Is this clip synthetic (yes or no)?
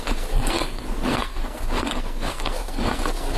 yes